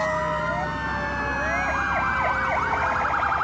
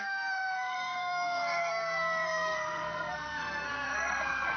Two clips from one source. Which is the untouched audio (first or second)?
first